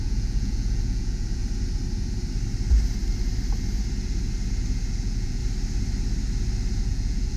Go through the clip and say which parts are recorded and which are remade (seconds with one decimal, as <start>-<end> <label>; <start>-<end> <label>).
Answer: 0.0-1.4 remade; 1.4-4.9 recorded; 4.9-5.4 remade; 5.4-6.8 recorded; 6.8-7.4 remade